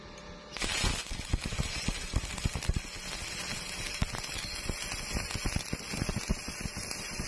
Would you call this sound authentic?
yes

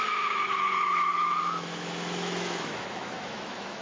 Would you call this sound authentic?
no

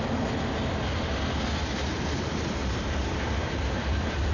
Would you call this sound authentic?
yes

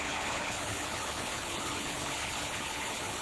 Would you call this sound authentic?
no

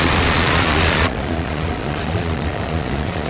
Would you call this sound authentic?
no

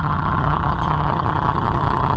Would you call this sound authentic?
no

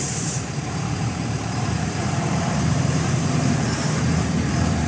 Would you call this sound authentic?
no